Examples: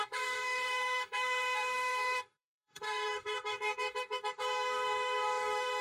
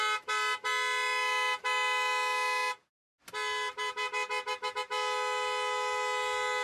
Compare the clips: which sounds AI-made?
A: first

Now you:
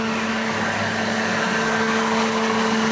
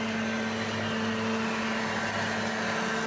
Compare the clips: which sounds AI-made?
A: first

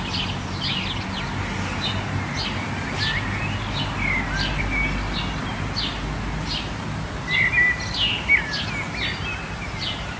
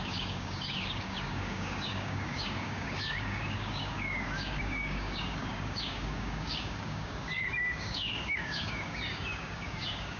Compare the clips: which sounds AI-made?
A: second